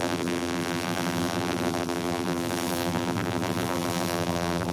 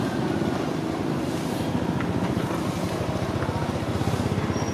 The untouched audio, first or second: second